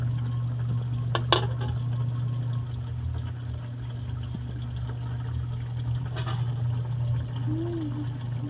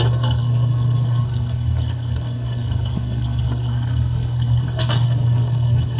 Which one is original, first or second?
first